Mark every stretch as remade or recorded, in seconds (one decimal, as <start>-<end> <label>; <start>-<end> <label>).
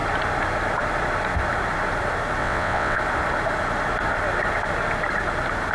0.0-2.4 recorded; 2.4-3.0 remade; 3.0-5.7 recorded